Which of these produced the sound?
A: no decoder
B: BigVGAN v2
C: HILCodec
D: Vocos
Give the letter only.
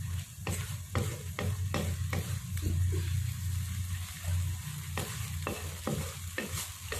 A